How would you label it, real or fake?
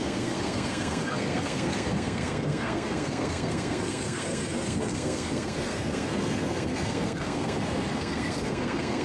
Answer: fake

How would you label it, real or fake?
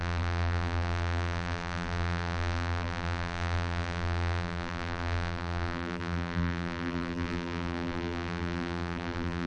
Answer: fake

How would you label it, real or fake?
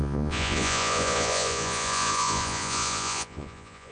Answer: fake